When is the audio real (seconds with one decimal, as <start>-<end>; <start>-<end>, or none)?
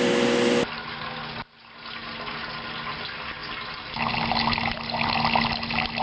0.0-6.0